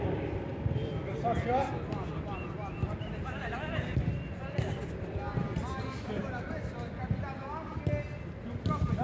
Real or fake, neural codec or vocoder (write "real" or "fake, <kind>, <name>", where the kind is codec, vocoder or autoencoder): real